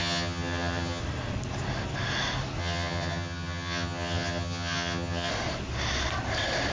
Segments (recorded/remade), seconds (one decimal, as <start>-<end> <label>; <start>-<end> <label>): 0.0-1.0 remade; 1.0-2.6 recorded; 2.6-5.3 remade; 5.3-6.7 recorded